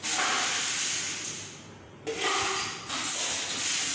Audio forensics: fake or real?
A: real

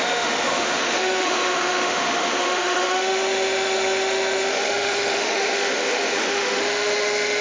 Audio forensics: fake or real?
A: fake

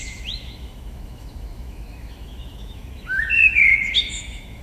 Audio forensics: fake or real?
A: fake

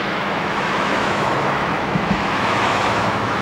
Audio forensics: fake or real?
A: fake